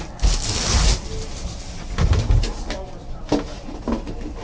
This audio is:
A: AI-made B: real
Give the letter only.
B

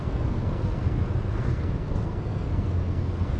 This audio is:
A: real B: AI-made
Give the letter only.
B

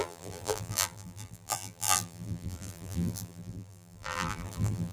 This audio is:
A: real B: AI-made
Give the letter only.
B